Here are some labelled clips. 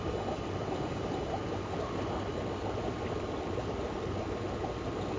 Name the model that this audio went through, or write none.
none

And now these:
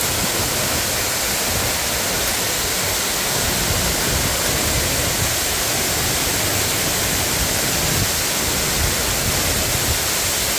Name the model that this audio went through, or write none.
none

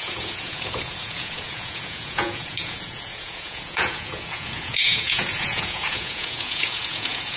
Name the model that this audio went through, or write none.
vocoder, Vocos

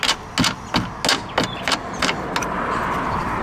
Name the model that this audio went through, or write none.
none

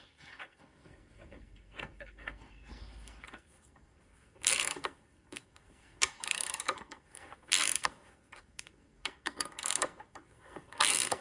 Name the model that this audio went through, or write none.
codec, SNAC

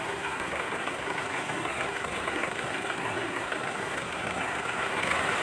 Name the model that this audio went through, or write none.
codec, SNAC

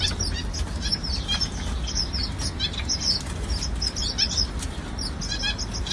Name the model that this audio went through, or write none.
none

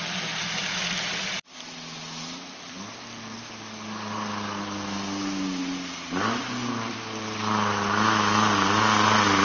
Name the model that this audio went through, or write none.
none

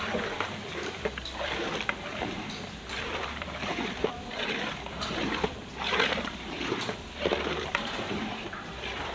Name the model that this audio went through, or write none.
vocoder, BigVGAN v2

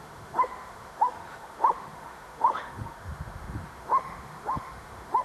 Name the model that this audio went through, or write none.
autoencoder, DAC-VAE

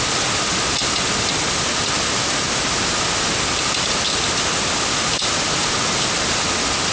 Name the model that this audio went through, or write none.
none